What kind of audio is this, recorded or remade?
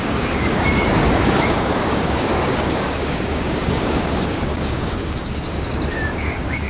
remade